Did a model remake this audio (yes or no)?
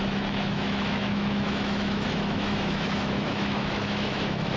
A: yes